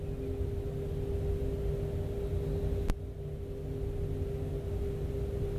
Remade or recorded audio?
recorded